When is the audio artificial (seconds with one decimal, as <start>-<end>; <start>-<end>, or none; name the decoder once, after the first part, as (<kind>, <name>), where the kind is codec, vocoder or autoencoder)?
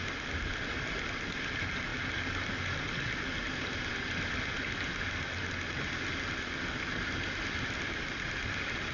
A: none